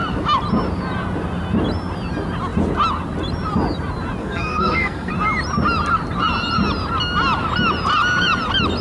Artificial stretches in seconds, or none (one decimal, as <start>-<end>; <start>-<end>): 4.2-5.1